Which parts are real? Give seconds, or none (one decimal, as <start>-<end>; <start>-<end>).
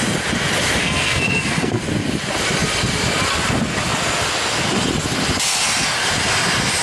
0.0-0.8; 1.8-6.8